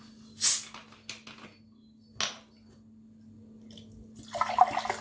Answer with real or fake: real